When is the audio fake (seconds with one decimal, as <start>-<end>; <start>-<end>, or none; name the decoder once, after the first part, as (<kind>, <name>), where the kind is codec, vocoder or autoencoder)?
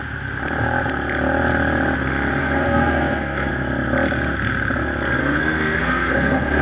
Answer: 2.4-3.5 (codec, SNAC); 5.2-6.6